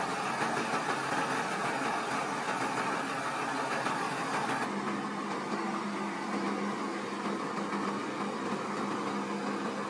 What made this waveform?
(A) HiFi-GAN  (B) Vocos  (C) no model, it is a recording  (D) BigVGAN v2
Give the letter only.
C